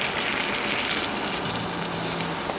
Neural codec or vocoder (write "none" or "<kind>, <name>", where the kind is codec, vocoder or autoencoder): none